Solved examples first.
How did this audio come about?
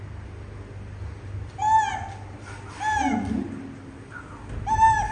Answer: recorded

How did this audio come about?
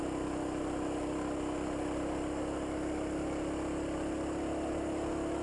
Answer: recorded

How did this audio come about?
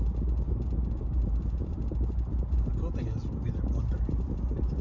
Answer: recorded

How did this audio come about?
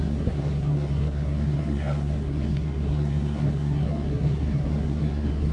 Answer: remade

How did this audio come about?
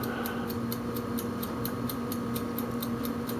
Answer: recorded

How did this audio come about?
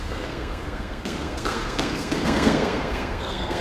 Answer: remade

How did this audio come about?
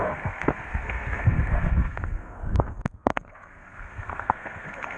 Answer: remade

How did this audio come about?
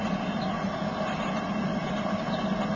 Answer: recorded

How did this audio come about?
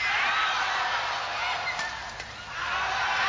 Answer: recorded